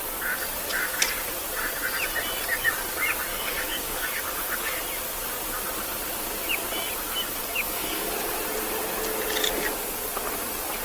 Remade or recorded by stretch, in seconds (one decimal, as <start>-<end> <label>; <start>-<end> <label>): 0.0-3.3 recorded; 3.3-4.7 remade; 4.7-7.4 recorded; 7.4-8.1 remade; 8.1-10.8 recorded